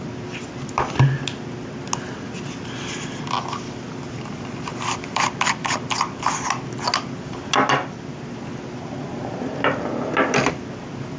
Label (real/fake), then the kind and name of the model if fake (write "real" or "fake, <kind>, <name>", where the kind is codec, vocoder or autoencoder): real